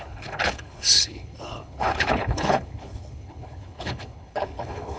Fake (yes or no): yes